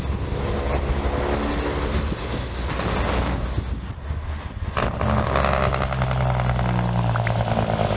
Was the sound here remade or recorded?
recorded